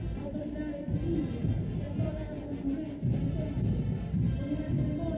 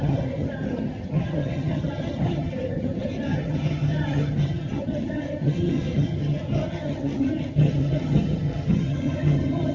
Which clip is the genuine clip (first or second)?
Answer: first